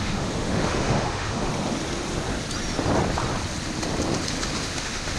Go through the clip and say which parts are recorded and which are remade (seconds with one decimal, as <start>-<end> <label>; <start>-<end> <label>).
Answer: 0.0-1.5 remade; 1.5-4.6 recorded; 4.6-5.2 remade